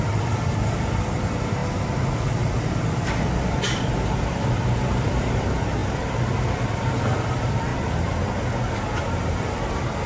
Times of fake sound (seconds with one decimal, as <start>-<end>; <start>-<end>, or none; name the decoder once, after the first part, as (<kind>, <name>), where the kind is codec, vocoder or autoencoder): 0.0-1.6 (vocoder, BigVGAN v2); 3.6-7.7; 9.2-10.1